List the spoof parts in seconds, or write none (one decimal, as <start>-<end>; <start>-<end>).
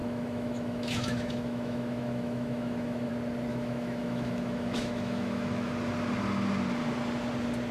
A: 0.0-3.1; 3.5-5.7